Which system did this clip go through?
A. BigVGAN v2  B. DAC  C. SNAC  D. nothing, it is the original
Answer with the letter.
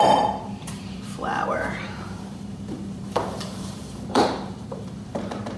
A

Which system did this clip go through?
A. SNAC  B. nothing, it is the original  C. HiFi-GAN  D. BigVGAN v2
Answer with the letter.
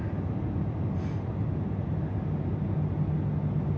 B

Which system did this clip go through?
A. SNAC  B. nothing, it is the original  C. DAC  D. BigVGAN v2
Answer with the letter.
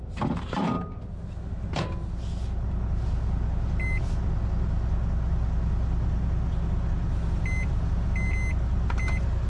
B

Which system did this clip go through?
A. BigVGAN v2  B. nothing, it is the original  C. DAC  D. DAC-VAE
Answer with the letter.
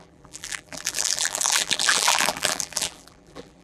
A